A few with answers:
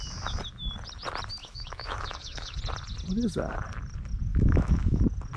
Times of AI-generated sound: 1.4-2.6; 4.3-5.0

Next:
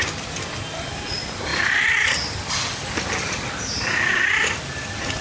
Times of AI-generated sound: none

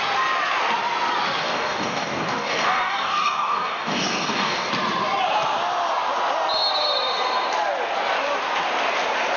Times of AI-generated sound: 1.4-4.7